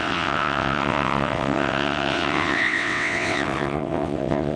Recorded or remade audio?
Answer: remade